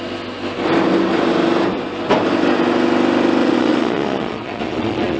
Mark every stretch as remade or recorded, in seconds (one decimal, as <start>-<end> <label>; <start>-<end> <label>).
0.0-3.4 recorded; 3.4-5.2 remade